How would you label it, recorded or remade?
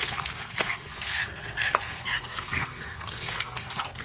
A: remade